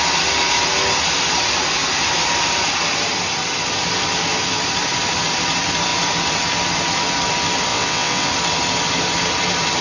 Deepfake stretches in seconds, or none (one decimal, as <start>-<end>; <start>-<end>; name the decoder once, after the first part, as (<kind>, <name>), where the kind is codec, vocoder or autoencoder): 7.7-8.3 (vocoder, WaveNeXt)